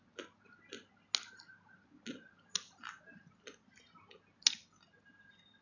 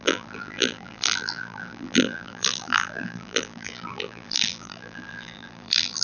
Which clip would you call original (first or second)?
first